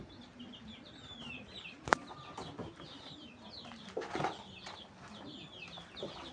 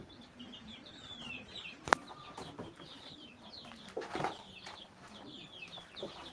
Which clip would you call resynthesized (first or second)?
second